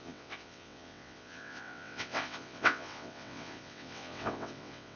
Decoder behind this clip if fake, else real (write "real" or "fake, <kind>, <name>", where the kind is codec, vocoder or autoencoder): fake, vocoder, WaveNeXt